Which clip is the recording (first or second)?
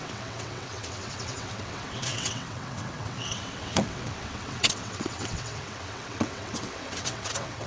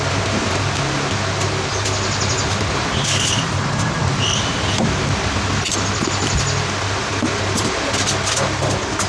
second